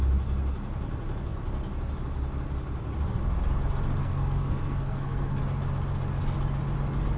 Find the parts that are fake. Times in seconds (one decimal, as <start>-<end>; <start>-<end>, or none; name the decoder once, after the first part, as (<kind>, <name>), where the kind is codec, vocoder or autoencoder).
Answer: 4.0-5.4 (codec, SNAC)